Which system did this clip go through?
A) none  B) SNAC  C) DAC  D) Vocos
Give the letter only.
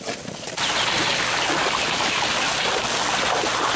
A